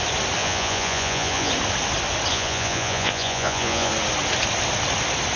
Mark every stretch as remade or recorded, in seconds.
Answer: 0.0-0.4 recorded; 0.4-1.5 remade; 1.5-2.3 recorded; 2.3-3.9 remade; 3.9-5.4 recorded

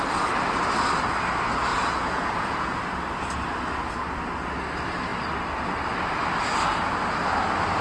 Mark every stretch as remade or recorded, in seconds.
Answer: 0.0-1.7 recorded; 1.7-2.8 remade; 2.8-7.8 recorded

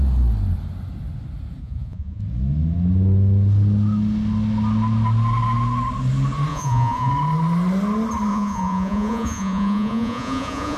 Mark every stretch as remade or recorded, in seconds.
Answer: 0.0-1.6 recorded; 1.6-2.2 remade; 2.2-6.5 recorded; 6.5-7.1 remade; 7.1-8.3 recorded; 8.3-10.8 remade

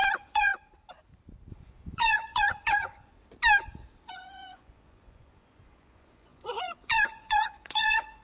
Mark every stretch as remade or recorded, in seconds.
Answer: 0.0-0.5 remade; 0.5-1.5 recorded; 1.5-3.1 remade; 3.1-4.1 recorded; 4.1-8.2 remade

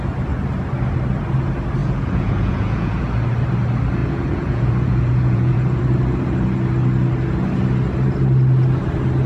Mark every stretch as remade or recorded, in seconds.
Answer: 0.0-1.8 recorded; 1.8-3.0 remade; 3.0-4.0 recorded; 4.0-5.8 remade; 5.8-9.3 recorded

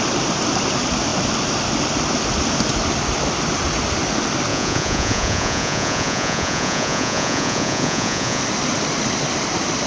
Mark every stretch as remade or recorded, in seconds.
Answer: 0.0-4.5 recorded; 4.5-8.4 remade; 8.4-9.9 recorded